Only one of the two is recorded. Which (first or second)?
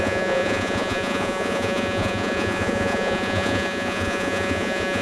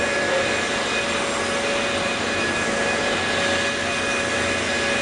second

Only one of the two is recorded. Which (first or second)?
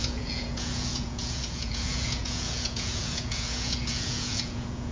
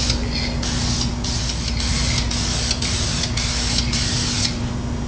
second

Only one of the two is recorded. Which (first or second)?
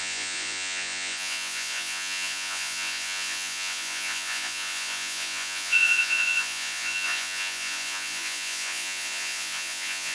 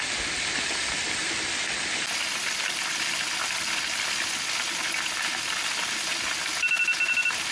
second